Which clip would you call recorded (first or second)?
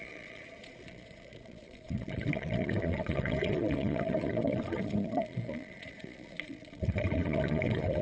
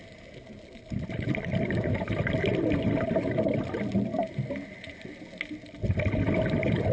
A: second